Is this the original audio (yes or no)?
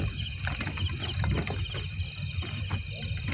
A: yes